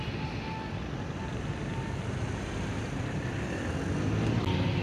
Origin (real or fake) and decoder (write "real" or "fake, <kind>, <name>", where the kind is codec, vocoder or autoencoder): real